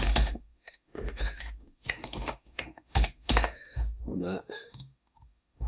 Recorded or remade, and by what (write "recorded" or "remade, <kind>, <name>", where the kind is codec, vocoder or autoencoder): remade, autoencoder, DAC-VAE